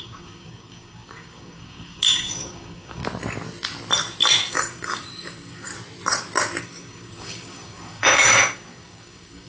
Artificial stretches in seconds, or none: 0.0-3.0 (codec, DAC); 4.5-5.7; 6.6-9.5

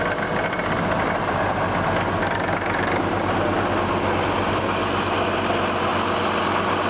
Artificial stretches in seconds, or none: none

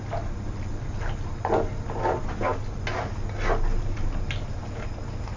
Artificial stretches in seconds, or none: none

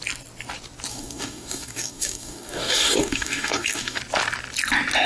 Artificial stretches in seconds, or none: 0.9-4.0 (codec, DAC)

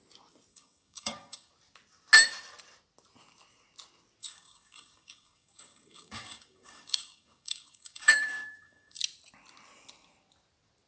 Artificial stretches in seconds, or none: 0.5-1.5 (codec, DAC); 4.2-9.0